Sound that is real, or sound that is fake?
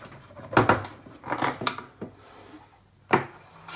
real